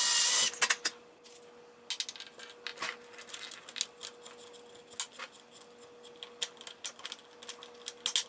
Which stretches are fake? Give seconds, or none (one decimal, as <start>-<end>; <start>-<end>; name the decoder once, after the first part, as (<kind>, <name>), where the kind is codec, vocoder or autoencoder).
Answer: none